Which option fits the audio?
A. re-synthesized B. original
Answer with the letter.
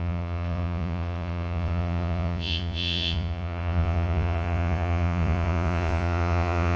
A